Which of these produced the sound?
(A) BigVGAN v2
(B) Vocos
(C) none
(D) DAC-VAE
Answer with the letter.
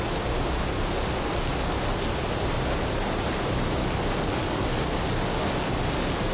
C